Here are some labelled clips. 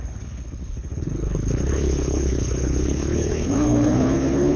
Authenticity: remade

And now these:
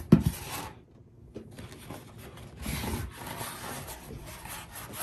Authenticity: recorded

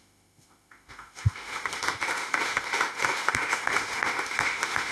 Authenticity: remade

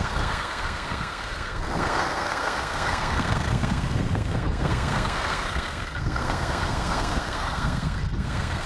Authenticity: remade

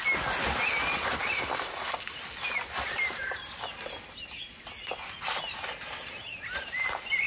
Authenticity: recorded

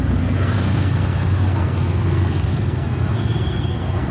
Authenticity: remade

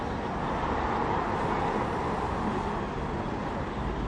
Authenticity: recorded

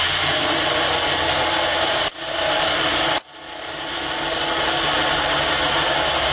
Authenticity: recorded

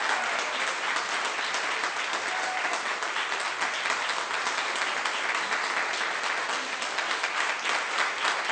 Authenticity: recorded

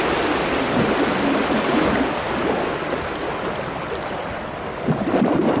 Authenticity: recorded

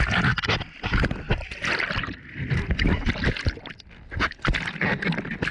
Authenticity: recorded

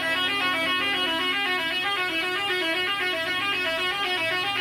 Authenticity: recorded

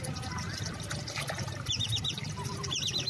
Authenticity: recorded